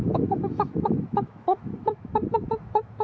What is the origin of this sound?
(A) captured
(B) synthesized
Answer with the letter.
B